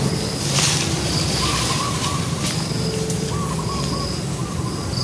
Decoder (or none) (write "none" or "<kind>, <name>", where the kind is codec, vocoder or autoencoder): none